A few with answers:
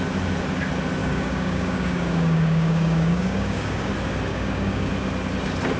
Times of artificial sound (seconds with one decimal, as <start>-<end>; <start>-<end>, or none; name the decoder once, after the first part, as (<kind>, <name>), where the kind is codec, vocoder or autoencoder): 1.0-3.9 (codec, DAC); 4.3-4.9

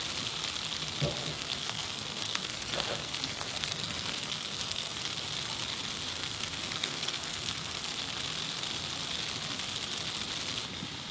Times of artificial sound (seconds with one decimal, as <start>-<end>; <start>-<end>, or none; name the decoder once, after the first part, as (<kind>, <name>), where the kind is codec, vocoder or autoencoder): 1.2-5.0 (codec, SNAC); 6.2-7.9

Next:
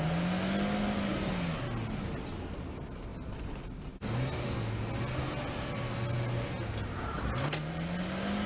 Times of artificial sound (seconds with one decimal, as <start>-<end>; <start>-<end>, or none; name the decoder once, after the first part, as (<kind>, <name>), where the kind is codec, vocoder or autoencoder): none

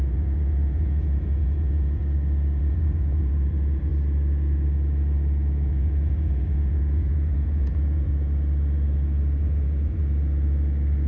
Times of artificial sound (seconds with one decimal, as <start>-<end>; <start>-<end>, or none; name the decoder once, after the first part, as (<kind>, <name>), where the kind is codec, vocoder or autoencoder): 0.0-2.0 (vocoder, Vocos); 2.6-3.9; 5.7-8.1; 9.4-10.0

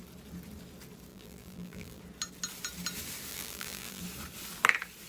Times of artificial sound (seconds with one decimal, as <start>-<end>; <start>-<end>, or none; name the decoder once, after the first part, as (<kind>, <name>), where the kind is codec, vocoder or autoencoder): 1.1-2.0 (vocoder, BigVGAN v2); 3.3-4.0

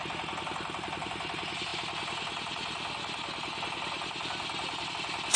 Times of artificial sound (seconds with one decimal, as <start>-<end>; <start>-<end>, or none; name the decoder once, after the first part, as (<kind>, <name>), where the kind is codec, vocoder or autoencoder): none

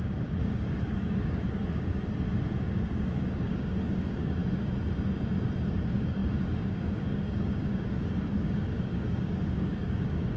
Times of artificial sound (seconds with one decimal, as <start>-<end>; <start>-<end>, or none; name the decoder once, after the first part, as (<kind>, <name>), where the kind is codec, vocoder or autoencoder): 0.0-2.1 (codec, DAC); 2.6-4.4; 5.7-10.4

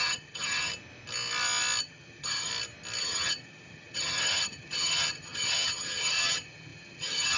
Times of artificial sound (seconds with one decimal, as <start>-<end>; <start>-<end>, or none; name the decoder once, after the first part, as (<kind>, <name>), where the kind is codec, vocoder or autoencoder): 0.0-0.7 (vocoder, HiFi-GAN); 1.8-2.5; 3.0-7.4